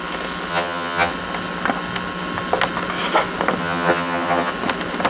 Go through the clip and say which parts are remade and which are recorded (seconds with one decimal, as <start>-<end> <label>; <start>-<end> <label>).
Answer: 0.0-0.5 recorded; 0.5-1.1 remade; 1.1-3.6 recorded; 3.6-4.5 remade; 4.5-5.1 recorded

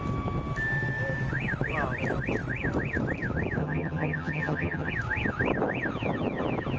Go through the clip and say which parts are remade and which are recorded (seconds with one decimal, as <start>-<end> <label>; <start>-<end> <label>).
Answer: 0.0-3.6 recorded; 3.6-4.9 remade; 4.9-6.8 recorded

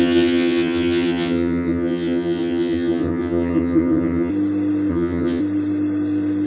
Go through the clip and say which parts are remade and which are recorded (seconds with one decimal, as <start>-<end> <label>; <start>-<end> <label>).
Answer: 0.0-4.3 remade; 4.3-4.9 recorded; 4.9-5.4 remade; 5.4-6.5 recorded

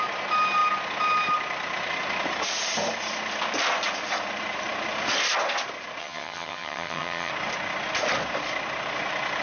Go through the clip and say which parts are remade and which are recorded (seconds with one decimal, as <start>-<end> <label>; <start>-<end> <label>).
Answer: 0.0-6.0 recorded; 6.0-7.3 remade; 7.3-9.4 recorded